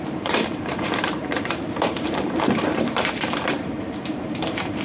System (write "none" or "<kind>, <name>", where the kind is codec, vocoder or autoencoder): vocoder, BigVGAN v2